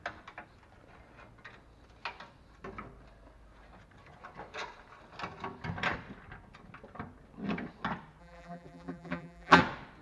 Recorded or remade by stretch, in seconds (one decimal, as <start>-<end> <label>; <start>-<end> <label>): 0.0-8.2 recorded; 8.2-9.6 remade; 9.6-10.0 recorded